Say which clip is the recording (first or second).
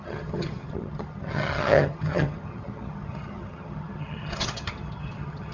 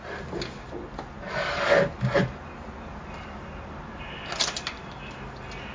second